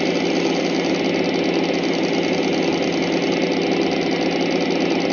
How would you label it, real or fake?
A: real